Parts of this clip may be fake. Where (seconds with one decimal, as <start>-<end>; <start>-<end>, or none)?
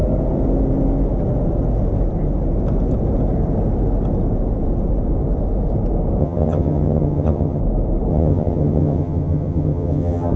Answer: 6.2-7.6; 8.1-10.4